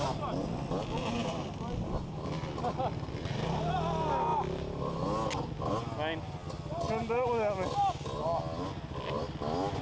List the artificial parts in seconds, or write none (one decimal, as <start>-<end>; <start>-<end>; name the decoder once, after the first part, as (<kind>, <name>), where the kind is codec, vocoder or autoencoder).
none